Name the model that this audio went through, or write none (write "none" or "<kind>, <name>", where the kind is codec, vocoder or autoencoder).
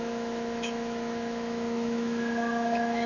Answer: autoencoder, DAC-VAE